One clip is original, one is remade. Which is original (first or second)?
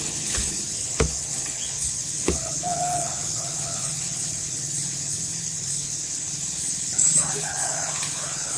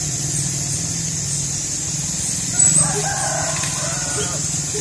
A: second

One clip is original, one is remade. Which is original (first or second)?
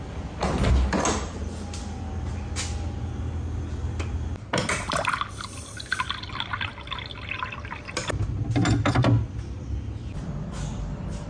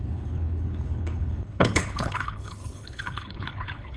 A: first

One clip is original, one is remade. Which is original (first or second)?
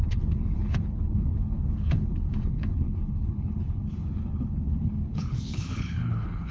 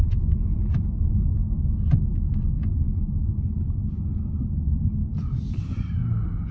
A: second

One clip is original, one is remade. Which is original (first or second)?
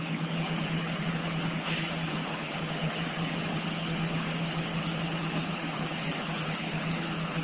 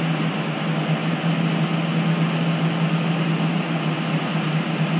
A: second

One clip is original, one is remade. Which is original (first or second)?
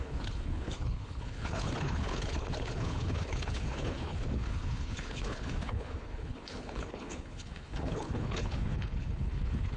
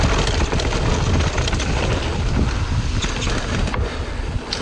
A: second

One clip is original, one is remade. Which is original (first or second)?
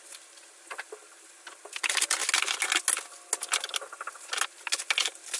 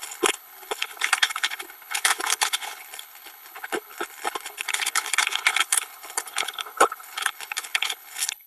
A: first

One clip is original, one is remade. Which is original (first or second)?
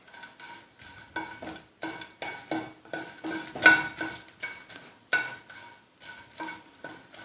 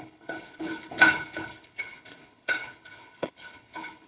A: first